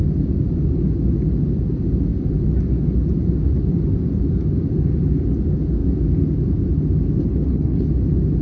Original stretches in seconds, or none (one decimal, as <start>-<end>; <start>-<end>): 0.0-7.2; 7.9-8.4